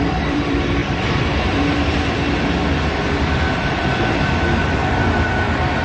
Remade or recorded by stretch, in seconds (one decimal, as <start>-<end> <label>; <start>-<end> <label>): 0.0-5.8 remade